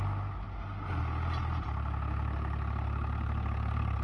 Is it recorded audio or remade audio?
recorded